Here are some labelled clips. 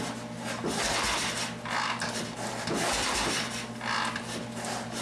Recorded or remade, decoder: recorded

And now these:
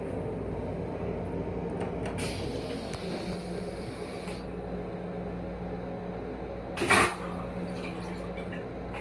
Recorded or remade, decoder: recorded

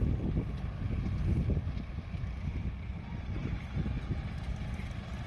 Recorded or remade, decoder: recorded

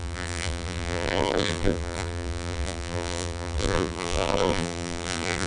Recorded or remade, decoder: remade, vocoder, BigVGAN v2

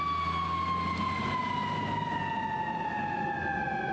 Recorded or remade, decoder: recorded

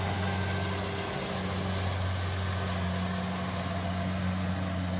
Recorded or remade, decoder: recorded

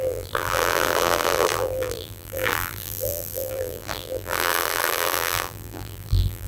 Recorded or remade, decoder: remade, vocoder, BigVGAN v2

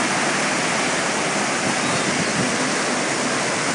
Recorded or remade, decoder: recorded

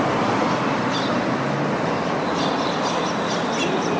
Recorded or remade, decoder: remade, vocoder, BigVGAN v2